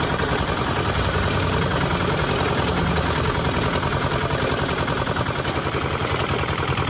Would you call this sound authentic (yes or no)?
yes